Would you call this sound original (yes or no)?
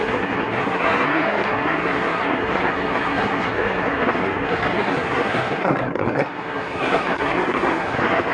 no